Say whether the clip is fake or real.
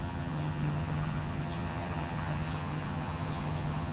fake